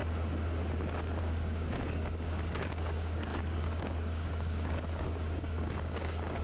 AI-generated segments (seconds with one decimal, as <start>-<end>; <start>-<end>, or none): 1.2-6.4